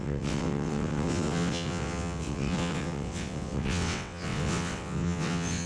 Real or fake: fake